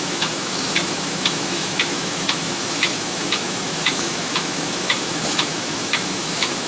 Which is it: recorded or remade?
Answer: remade